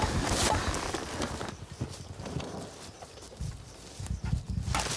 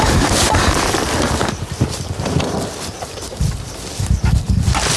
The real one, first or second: first